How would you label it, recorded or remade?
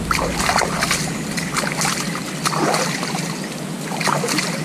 recorded